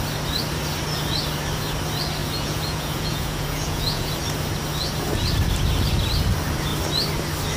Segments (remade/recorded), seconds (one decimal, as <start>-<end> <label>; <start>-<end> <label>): 0.0-2.2 recorded; 2.2-4.1 remade; 4.1-7.6 recorded